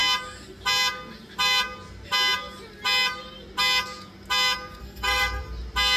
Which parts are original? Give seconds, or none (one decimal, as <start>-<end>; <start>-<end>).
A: 0.0-4.8; 5.4-6.0